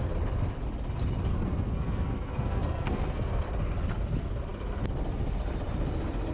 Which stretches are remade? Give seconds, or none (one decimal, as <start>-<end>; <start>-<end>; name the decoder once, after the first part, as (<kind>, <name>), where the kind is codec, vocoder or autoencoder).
1.3-3.4 (codec, SNAC)